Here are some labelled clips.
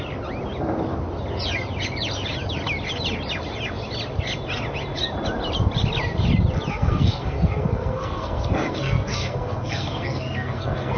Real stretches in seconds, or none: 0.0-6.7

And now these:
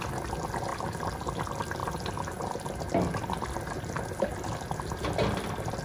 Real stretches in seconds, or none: 0.0-5.8

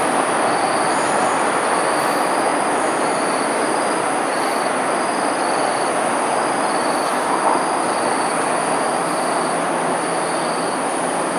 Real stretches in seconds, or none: 0.0-11.4

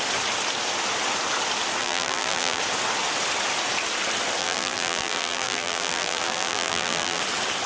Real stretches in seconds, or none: 0.0-1.8; 2.6-4.4; 7.2-7.7